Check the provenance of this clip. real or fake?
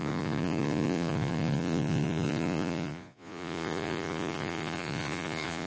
fake